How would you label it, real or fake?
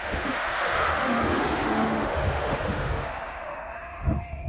fake